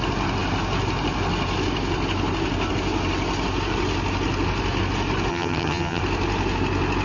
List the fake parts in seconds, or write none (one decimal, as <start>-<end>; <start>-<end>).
5.3-6.0